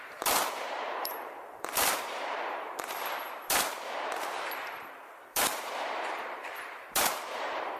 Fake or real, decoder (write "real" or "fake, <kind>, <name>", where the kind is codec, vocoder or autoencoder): fake, vocoder, BigVGAN v2